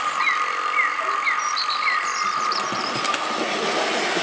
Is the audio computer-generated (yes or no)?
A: no